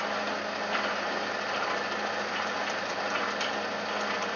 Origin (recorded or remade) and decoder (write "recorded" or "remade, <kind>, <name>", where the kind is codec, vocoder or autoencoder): recorded